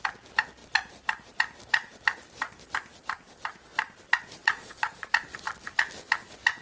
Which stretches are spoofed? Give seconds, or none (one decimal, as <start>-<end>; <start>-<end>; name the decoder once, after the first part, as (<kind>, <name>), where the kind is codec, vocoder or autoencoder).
4.4-5.1 (vocoder, Vocos)